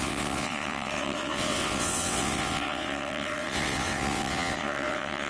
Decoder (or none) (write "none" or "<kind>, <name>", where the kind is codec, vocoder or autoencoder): vocoder, WaveNeXt